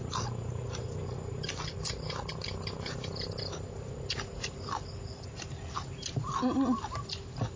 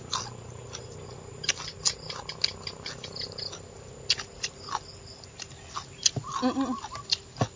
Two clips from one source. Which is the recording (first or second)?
second